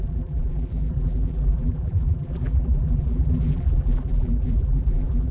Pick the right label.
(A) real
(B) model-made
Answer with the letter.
B